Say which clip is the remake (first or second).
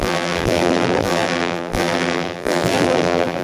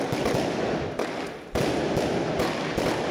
first